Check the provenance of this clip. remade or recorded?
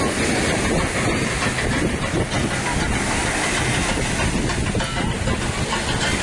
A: recorded